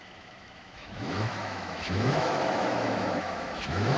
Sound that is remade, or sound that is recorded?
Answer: remade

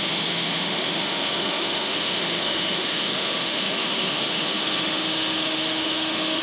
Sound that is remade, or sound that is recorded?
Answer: remade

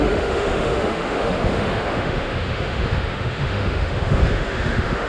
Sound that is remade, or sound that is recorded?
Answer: remade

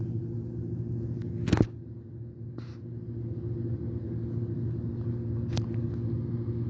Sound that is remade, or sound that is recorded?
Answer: recorded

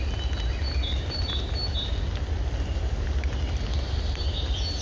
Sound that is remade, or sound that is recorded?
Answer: recorded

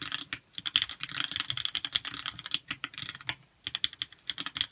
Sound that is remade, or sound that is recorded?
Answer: recorded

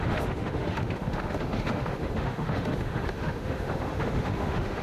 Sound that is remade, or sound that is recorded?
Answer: remade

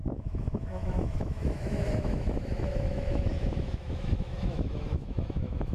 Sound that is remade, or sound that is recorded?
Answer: remade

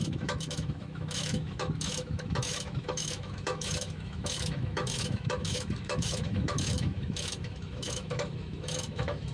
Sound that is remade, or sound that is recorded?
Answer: remade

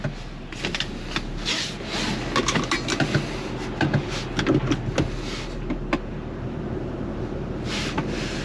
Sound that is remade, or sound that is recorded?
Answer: recorded